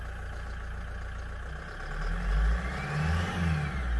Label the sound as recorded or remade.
recorded